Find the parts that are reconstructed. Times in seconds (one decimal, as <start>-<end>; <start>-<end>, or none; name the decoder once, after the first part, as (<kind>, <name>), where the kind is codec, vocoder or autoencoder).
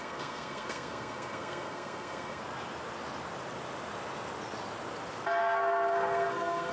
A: 0.0-2.4 (codec, SNAC); 5.4-6.7